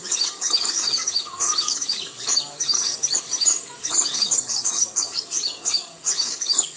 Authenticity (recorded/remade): remade